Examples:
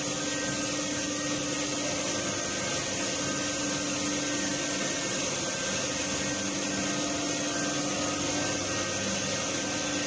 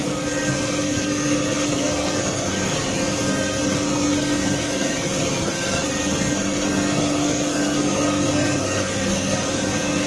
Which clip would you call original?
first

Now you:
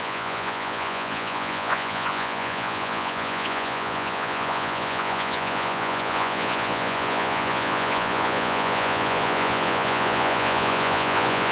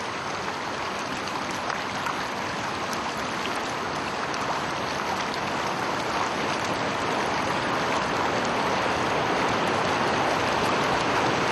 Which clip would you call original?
second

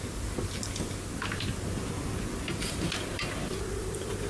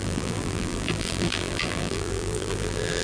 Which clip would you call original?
first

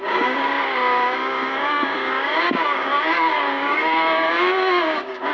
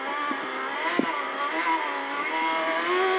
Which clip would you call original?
second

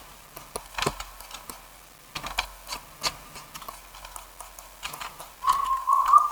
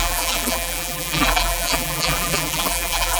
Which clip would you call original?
first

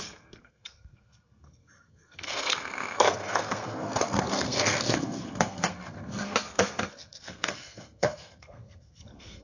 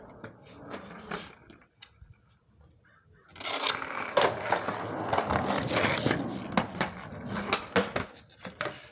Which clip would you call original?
second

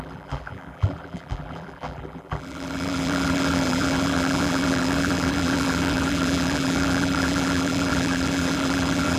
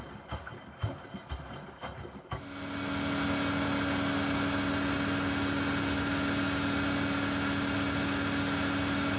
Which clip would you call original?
second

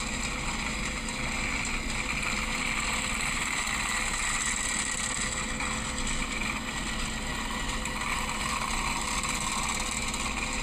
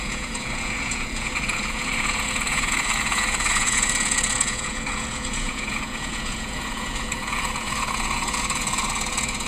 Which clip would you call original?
first